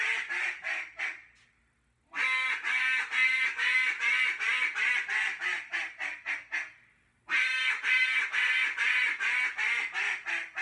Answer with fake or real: real